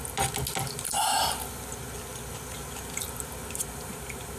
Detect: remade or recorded recorded